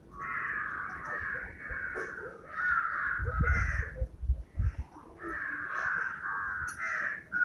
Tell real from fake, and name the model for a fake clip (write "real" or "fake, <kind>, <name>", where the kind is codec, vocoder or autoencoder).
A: real